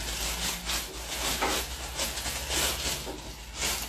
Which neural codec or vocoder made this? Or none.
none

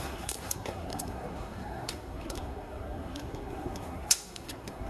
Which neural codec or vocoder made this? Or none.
codec, SNAC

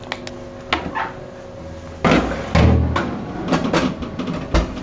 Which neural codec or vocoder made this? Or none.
none